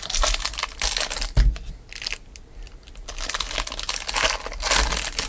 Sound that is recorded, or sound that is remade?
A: recorded